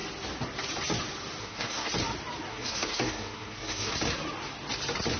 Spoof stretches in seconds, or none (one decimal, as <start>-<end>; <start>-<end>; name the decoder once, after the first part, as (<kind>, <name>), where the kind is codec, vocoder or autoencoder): 1.4-1.9 (codec, SNAC); 2.5-3.9